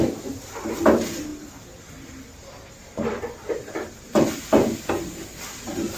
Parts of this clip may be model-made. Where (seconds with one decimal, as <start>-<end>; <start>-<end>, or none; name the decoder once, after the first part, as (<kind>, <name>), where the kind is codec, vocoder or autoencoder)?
none